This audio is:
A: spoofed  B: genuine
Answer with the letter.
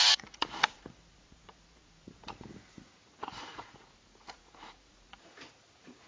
A